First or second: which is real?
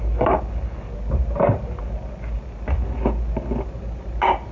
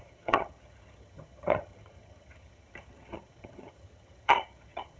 first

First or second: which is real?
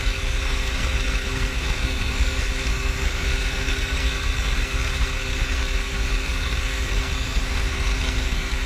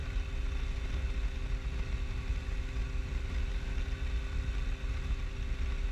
second